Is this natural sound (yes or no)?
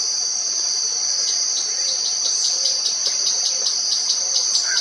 no